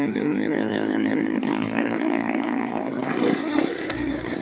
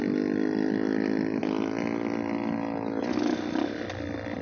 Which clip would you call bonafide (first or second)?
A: second